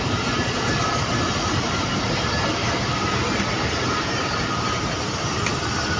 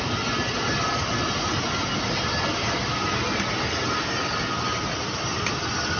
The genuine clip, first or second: second